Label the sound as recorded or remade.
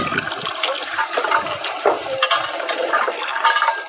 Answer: recorded